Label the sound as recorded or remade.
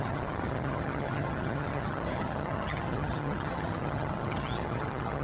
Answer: remade